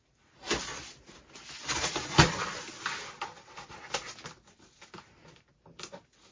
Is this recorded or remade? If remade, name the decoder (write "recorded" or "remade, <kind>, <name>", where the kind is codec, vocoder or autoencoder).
recorded